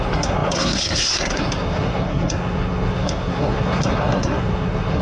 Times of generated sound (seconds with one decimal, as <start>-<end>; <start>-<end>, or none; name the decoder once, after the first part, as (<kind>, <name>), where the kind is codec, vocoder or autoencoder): 0.0-5.0 (codec, SNAC)